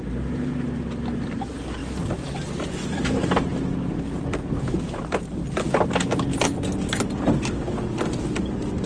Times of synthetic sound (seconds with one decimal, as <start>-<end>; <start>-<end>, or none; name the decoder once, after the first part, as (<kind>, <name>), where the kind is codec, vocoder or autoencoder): none